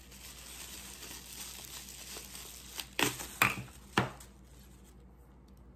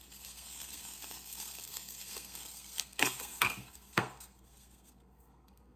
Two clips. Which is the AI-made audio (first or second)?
second